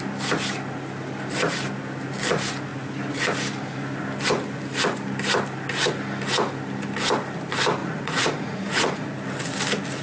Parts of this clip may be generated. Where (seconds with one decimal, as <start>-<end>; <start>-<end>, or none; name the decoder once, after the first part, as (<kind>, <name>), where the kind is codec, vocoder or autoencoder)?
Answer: 7.8-9.1 (vocoder, Vocos)